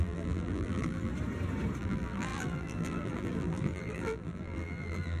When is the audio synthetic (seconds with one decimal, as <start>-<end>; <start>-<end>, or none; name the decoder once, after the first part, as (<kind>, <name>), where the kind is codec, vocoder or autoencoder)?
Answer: 0.0-1.1 (vocoder, BigVGAN v2); 1.8-5.2

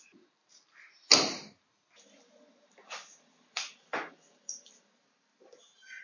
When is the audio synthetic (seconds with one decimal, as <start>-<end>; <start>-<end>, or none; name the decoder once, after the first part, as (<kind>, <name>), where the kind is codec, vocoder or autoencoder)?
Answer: 0.0-0.4 (vocoder, BigVGAN v2); 2.9-6.0

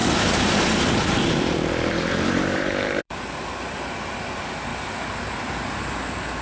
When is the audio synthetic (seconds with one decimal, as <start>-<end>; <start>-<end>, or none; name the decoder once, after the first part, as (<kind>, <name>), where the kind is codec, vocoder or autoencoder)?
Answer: 0.0-3.8 (vocoder, BigVGAN v2); 4.7-5.5

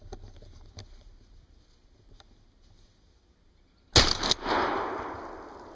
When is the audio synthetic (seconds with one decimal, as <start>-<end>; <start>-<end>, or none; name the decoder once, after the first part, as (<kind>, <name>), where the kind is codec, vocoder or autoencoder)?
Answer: none